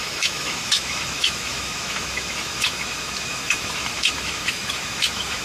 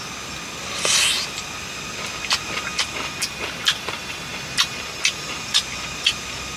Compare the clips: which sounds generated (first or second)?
first